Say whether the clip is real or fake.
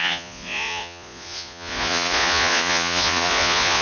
fake